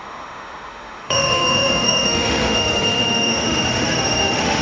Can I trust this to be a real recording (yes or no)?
no